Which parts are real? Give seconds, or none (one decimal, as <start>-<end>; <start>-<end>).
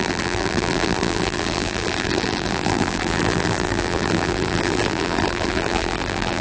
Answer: none